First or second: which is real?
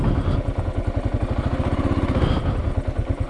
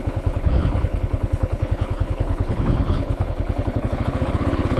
first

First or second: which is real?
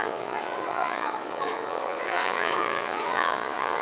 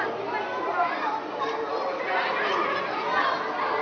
second